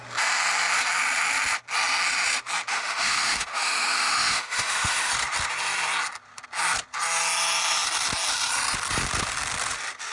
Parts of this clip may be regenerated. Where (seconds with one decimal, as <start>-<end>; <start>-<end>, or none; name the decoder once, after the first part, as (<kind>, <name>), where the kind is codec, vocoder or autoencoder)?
2.7-5.1 (autoencoder, DAC-VAE)